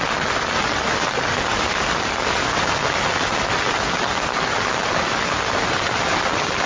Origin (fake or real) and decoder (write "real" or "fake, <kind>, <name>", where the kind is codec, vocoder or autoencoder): real